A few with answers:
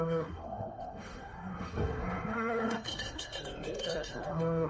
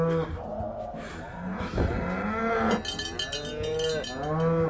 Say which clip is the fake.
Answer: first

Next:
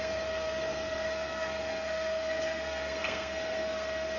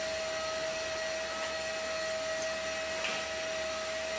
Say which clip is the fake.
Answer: first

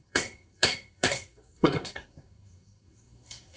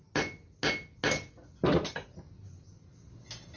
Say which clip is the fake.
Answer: first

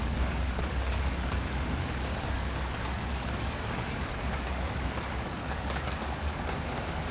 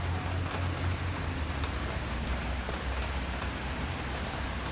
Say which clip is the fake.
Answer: first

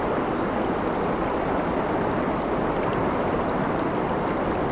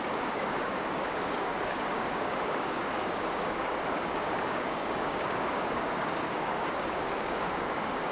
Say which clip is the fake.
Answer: second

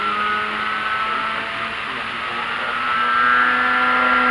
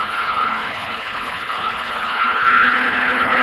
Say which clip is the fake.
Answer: second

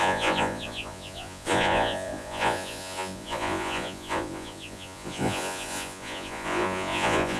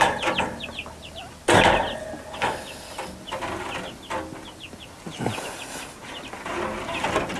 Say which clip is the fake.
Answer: first